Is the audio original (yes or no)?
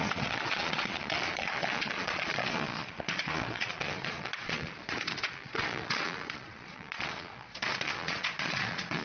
no